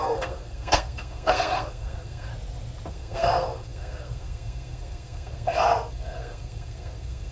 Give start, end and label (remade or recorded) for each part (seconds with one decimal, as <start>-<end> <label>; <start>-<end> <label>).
0.0-2.3 remade; 2.3-2.9 recorded; 2.9-7.3 remade